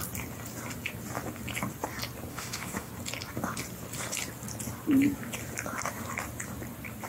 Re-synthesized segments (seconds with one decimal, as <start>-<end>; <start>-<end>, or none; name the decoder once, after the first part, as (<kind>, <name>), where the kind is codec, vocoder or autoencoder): 2.3-2.9 (autoencoder, DAC-VAE)